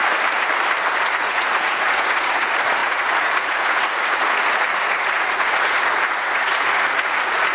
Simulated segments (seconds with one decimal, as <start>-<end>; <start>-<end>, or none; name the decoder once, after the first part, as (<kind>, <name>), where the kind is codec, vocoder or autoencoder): 1.2-7.5 (vocoder, Vocos)